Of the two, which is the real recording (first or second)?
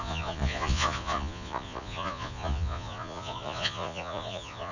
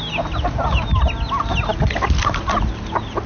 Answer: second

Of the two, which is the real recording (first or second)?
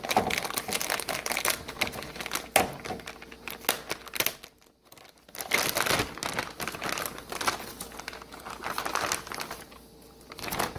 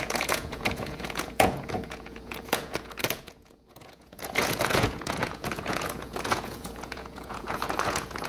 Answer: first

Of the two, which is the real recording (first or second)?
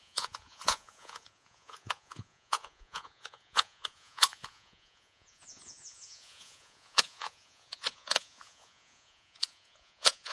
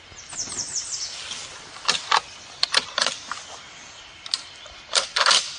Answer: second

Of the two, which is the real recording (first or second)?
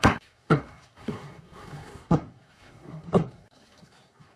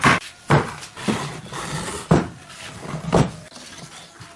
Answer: second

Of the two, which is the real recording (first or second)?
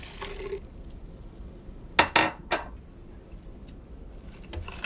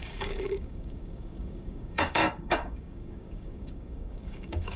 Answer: first